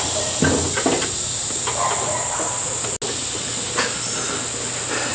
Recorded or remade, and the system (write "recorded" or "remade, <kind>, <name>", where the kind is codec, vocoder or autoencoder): recorded